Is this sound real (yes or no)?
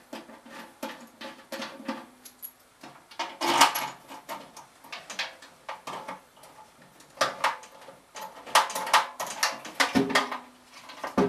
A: yes